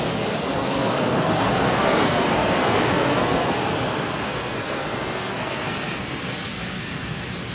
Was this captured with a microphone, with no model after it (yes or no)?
no